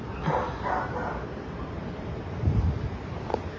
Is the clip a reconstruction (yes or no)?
yes